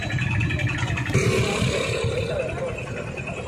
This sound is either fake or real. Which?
real